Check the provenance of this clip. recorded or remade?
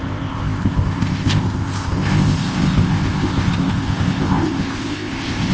remade